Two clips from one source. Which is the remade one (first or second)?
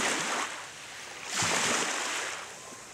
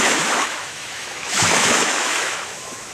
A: second